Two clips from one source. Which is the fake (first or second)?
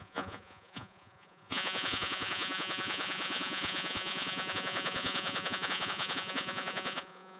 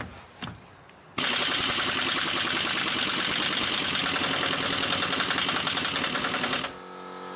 first